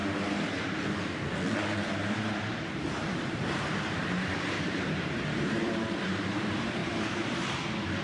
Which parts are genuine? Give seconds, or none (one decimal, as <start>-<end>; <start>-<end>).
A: 0.0-1.8; 5.7-6.8; 7.4-8.0